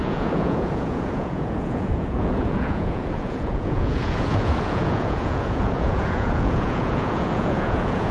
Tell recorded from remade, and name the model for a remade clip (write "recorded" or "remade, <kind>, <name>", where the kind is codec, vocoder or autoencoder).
remade, vocoder, Vocos